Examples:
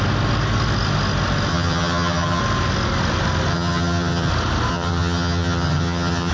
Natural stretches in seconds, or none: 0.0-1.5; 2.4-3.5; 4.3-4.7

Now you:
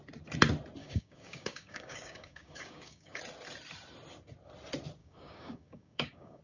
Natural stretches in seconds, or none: 0.0-0.8; 3.2-5.0

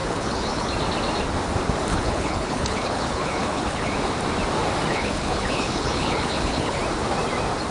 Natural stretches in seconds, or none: 0.7-1.9; 3.9-4.9; 6.8-7.7

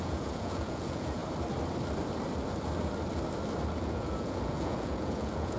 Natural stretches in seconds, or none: 1.2-3.8

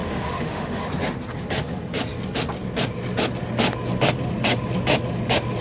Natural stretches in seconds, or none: 0.8-5.6

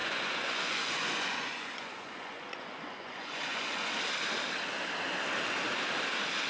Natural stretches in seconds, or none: 3.9-6.5